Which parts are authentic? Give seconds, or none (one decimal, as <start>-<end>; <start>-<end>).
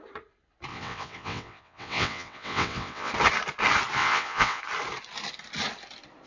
0.0-0.7; 3.1-4.0; 4.6-6.3